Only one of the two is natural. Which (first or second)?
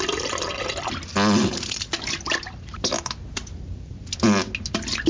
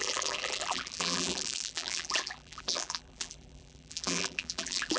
first